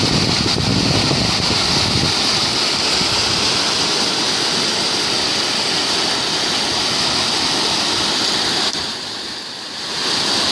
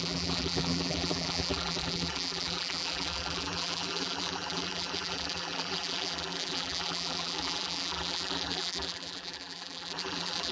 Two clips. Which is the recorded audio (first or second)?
first